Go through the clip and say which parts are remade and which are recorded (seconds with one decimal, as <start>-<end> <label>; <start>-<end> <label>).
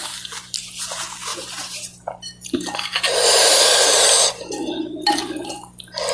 0.0-1.3 recorded; 1.3-1.8 remade; 1.8-6.1 recorded